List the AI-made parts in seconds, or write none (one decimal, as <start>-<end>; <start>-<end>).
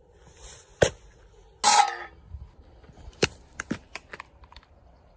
0.0-0.7; 3.2-5.2